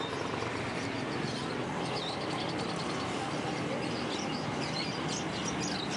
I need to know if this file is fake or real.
real